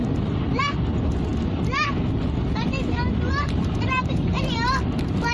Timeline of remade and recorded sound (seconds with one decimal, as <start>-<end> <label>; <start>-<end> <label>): 0.0-5.3 recorded